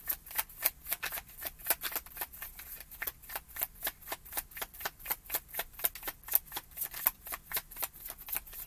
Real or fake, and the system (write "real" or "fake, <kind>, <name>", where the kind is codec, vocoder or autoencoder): real